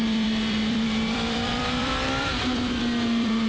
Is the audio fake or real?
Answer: fake